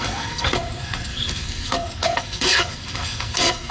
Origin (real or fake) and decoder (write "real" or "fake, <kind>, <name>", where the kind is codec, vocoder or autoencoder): fake, codec, SNAC